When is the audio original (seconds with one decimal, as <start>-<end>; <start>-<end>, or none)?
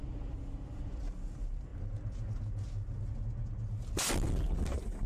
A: 0.0-5.1